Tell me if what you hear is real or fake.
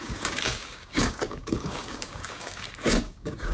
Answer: fake